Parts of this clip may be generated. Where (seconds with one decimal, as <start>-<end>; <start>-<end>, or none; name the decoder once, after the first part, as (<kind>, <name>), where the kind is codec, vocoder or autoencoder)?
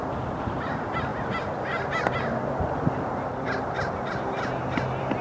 0.0-5.2 (vocoder, BigVGAN v2)